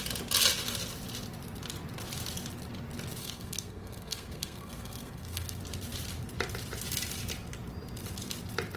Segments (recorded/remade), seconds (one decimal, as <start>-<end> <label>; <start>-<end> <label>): 0.0-3.2 recorded; 3.2-5.6 remade; 5.6-8.8 recorded